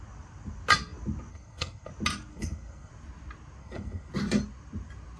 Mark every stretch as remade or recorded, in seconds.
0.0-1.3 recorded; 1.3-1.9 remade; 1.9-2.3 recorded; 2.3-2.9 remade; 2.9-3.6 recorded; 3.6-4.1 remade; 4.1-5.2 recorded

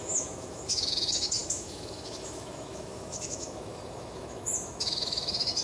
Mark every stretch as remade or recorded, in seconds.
0.0-5.6 remade

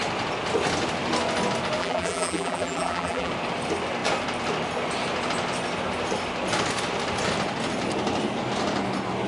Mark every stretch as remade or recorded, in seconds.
0.0-1.8 recorded; 1.8-3.3 remade; 3.3-9.3 recorded

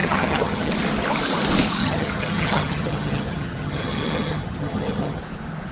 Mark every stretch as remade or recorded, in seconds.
0.0-0.7 remade; 0.7-1.8 recorded; 1.8-5.2 remade; 5.2-5.7 recorded

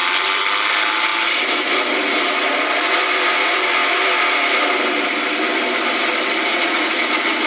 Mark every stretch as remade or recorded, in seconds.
0.0-6.5 recorded; 6.5-7.0 remade; 7.0-7.5 recorded

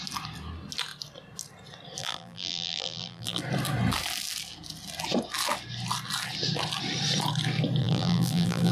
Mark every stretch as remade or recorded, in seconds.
0.0-2.0 recorded; 2.0-3.4 remade; 3.4-7.8 recorded; 7.8-8.7 remade

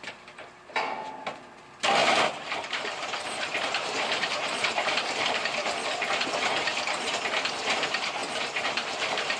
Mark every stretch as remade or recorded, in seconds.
0.0-2.0 recorded; 2.0-6.3 remade; 6.3-8.2 recorded; 8.2-9.4 remade